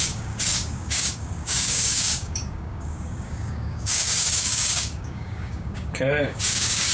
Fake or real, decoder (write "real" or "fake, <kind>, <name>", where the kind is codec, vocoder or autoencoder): fake, codec, DAC